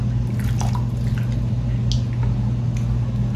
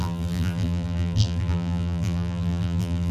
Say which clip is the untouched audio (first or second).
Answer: first